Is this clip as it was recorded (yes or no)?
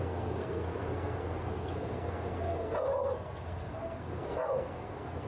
no